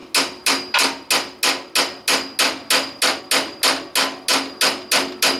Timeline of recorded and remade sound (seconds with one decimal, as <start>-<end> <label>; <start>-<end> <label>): 0.0-5.4 recorded